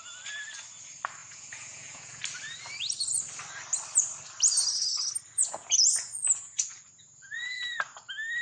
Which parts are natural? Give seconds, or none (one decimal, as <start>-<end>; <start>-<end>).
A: 0.0-1.2; 2.2-5.4; 7.8-8.4